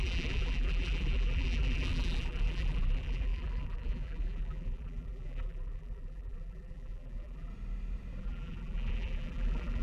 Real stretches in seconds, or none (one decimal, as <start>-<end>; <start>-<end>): 7.5-8.2

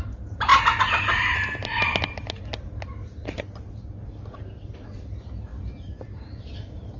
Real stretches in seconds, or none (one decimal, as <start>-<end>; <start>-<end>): 0.5-4.7

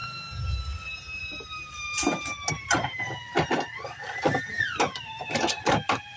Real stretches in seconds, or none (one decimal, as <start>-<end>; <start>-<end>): 0.0-1.2; 1.9-2.5; 3.3-5.4

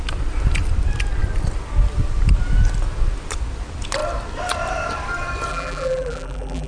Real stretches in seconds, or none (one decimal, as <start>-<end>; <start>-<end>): 0.0-5.5

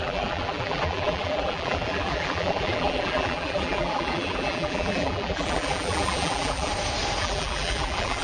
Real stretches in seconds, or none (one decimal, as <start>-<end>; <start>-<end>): 6.7-7.2

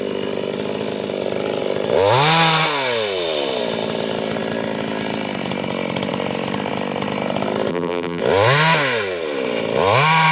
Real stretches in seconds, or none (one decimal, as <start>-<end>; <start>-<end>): 0.0-7.7; 8.2-10.3